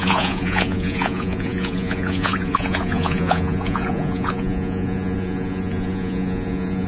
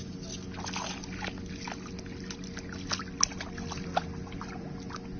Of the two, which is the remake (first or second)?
first